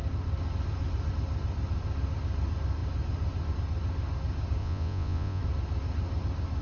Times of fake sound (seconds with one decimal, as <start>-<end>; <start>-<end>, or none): 4.6-5.4